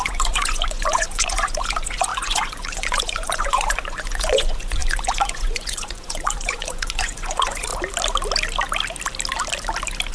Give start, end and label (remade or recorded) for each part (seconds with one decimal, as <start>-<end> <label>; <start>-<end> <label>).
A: 0.0-7.7 remade; 7.7-10.1 recorded